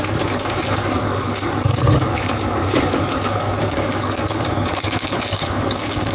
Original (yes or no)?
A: no